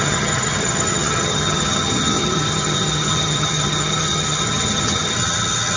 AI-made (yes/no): yes